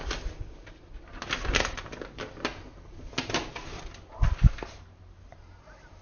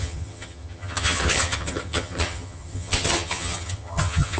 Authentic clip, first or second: first